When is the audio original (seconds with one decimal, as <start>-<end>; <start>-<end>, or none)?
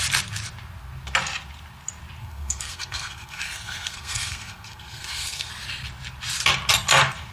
0.0-2.2; 5.5-7.3